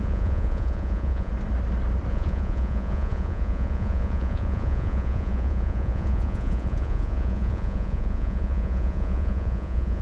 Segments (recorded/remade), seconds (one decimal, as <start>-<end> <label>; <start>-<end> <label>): 0.0-1.3 remade; 1.3-2.1 recorded; 2.1-10.0 remade